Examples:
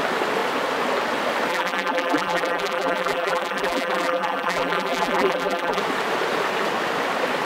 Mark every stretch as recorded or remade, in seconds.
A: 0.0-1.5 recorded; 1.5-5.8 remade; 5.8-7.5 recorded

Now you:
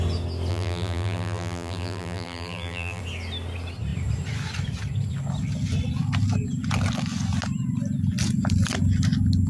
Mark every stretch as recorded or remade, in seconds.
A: 0.0-0.5 recorded; 0.5-3.0 remade; 3.0-9.5 recorded

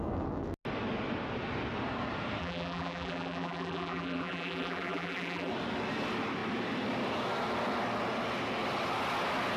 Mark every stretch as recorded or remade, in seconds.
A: 0.0-2.4 recorded; 2.4-5.5 remade; 5.5-9.6 recorded

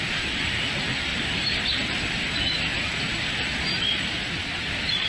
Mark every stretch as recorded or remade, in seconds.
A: 0.0-5.1 remade

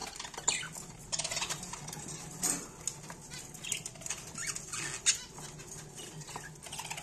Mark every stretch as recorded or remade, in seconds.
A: 0.0-7.0 recorded

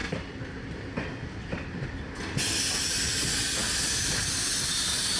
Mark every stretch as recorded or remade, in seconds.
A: 0.0-0.7 remade; 0.7-3.6 recorded; 3.6-4.4 remade; 4.4-5.2 recorded

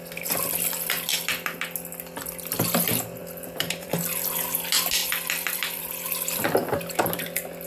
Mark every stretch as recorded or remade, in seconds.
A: 0.0-3.2 recorded; 3.2-3.9 remade; 3.9-5.0 recorded; 5.0-5.8 remade; 5.8-7.7 recorded

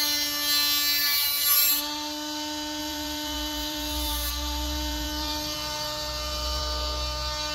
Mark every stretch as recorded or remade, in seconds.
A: 0.0-1.0 recorded; 1.0-1.7 remade; 1.7-2.8 recorded; 2.8-6.6 remade; 6.6-7.5 recorded